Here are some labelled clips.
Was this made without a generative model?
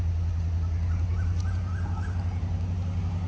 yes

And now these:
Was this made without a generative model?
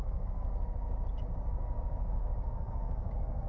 yes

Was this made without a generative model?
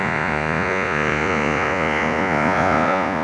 no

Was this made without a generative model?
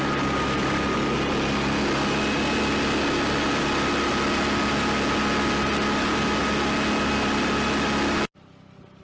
yes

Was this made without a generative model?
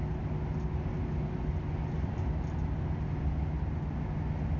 yes